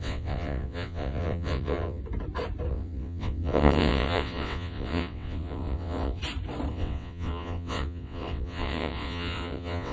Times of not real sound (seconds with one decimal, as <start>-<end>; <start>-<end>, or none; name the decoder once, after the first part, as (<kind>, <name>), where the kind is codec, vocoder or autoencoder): 0.0-2.0 (vocoder, WaveNeXt); 2.7-6.2; 6.7-9.9